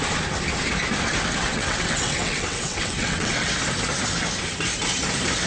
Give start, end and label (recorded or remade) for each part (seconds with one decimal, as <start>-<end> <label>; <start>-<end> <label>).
0.0-1.4 recorded; 1.4-3.5 remade; 3.5-5.5 recorded